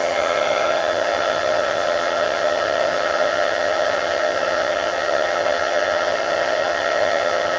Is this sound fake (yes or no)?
yes